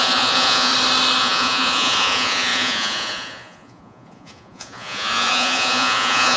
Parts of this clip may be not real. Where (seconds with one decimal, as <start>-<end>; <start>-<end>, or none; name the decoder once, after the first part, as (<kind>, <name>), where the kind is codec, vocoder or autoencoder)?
0.0-0.7 (vocoder, Vocos); 1.2-6.4